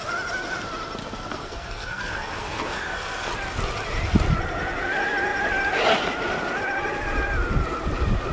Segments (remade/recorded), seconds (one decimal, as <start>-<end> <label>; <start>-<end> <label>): 0.0-1.0 recorded; 1.0-3.3 remade; 3.3-8.3 recorded